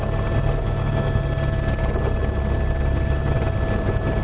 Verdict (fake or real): real